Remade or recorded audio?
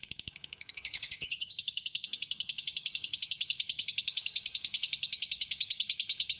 remade